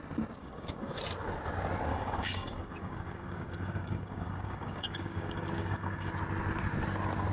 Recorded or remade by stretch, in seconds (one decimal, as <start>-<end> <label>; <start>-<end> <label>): 0.0-0.4 recorded; 0.4-1.0 remade; 1.0-1.9 recorded; 1.9-6.1 remade; 6.1-7.3 recorded